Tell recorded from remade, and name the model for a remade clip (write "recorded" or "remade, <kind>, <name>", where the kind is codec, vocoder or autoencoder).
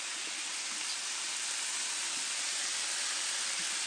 recorded